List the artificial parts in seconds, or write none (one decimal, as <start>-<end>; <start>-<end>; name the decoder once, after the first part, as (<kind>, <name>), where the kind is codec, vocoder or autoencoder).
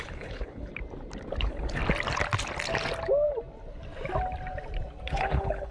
0.0-0.7 (codec, HILCodec); 1.4-1.8; 5.1-5.7